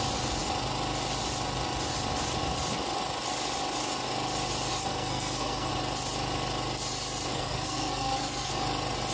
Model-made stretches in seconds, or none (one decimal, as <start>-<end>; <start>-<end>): 4.7-5.7; 7.3-8.5